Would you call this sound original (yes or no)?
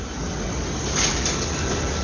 yes